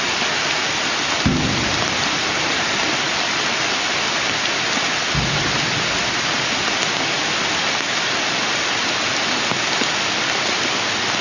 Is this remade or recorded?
recorded